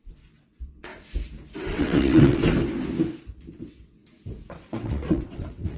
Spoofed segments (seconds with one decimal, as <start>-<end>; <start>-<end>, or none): 0.0-0.9; 1.7-2.4; 3.6-4.0; 4.5-5.8